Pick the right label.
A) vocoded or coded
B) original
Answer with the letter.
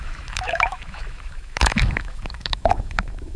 A